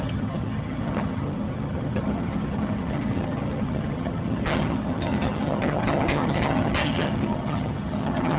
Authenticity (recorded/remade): remade